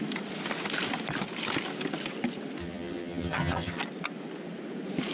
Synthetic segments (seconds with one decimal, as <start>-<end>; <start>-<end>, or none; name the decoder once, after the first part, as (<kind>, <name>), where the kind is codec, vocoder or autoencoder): 2.6-3.8 (vocoder, HiFi-GAN)